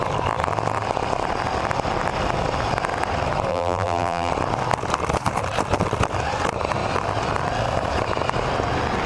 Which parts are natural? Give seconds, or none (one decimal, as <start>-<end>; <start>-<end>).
0.0-3.5; 4.3-9.1